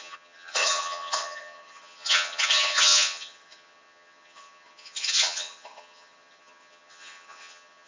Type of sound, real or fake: fake